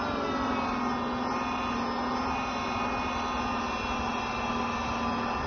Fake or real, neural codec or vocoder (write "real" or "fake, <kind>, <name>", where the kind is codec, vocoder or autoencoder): real